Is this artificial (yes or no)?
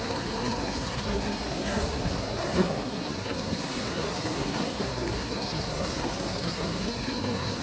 yes